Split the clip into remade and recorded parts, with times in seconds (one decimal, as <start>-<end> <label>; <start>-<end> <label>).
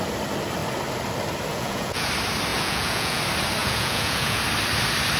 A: 0.0-1.5 recorded; 1.5-2.1 remade; 2.1-2.5 recorded; 2.5-3.2 remade; 3.2-3.6 recorded; 3.6-4.4 remade; 4.4-5.2 recorded